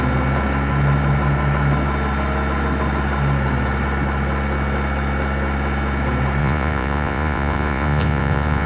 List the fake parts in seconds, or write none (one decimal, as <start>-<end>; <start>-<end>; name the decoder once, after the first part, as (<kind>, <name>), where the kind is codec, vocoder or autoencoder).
6.4-8.7 (vocoder, Vocos)